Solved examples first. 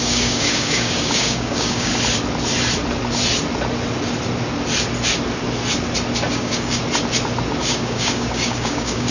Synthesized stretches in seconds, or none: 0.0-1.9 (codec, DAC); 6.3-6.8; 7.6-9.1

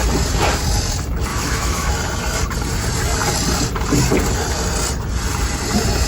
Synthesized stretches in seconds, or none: 1.3-1.9 (autoencoder, DAC-VAE)